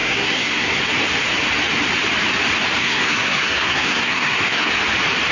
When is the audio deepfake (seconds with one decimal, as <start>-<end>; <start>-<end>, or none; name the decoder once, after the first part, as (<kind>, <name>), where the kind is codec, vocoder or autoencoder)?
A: 0.0-0.8 (codec, SNAC); 2.8-4.7